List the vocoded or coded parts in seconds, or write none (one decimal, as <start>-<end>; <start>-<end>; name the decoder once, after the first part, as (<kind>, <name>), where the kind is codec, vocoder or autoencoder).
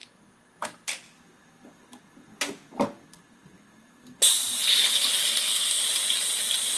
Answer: 5.3-5.8 (codec, SNAC)